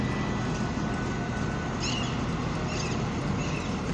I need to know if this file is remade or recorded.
recorded